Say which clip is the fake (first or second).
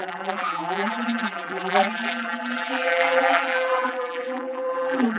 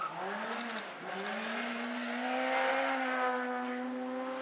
first